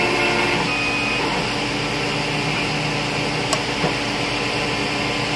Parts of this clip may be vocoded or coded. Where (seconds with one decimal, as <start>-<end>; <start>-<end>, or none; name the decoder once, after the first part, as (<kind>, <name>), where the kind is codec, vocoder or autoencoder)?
1.3-4.5 (vocoder, BigVGAN v2)